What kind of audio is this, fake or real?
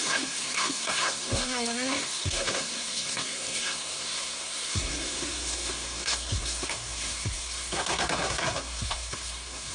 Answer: fake